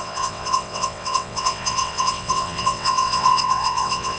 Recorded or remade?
remade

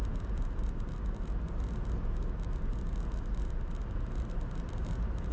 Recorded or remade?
recorded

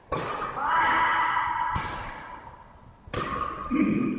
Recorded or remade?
recorded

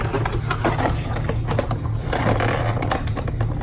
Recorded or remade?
recorded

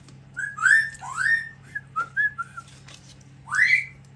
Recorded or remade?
recorded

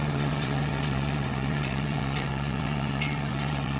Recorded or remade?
remade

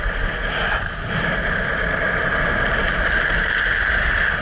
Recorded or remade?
recorded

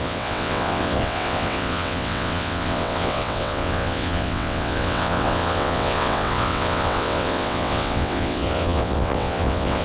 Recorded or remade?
remade